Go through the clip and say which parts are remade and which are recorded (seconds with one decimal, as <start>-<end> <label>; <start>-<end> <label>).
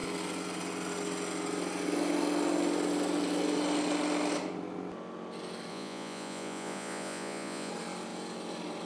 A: 0.0-5.7 recorded; 5.7-7.7 remade; 7.7-8.9 recorded